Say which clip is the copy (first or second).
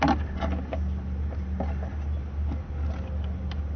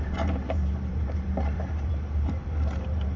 second